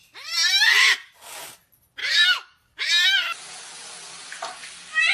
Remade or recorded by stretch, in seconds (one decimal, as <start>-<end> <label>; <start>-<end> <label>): 0.0-2.0 recorded; 2.0-2.9 remade; 2.9-5.1 recorded